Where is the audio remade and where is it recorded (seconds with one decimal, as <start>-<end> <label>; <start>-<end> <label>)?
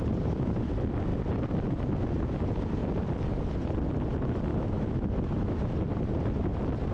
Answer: 0.0-4.5 recorded; 4.5-5.7 remade; 5.7-6.9 recorded